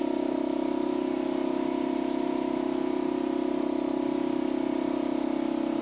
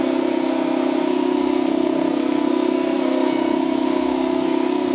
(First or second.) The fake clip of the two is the second